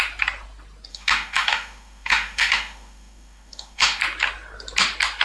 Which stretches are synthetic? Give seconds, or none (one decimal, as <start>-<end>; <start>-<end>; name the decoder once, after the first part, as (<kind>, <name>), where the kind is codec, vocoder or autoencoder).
0.9-4.0 (autoencoder, DAC-VAE)